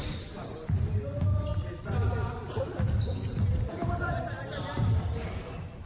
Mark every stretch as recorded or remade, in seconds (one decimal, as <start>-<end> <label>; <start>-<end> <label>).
0.0-5.9 recorded